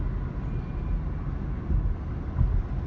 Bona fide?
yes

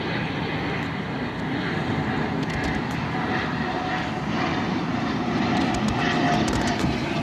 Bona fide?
yes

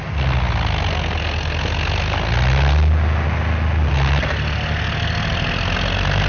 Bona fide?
yes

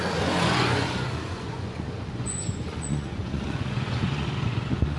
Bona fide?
no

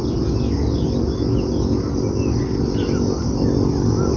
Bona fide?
yes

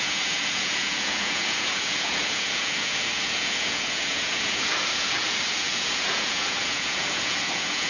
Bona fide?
no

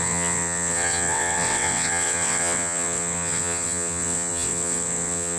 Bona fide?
no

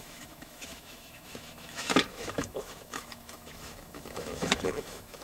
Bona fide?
no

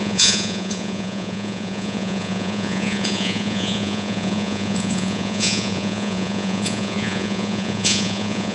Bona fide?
no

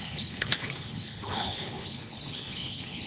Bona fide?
no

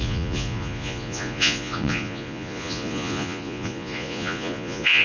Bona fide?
no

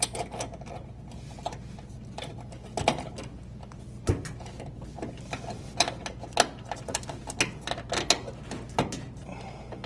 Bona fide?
yes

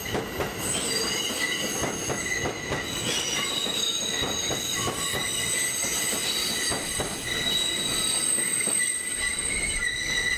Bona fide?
yes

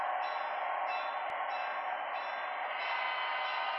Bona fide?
yes